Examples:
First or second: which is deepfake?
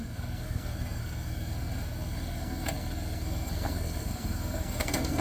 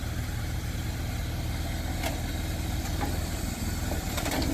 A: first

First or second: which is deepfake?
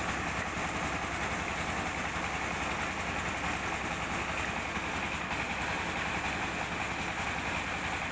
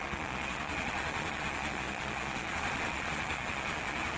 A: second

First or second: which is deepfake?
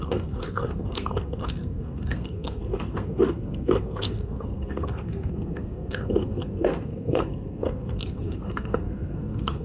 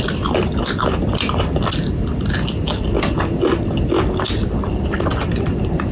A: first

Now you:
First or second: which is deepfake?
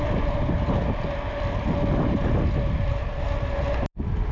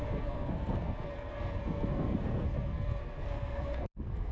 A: second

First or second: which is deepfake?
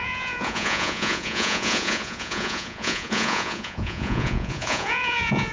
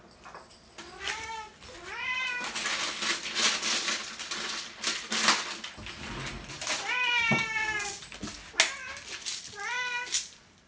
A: first